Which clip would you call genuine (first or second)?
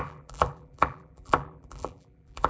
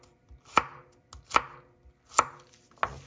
second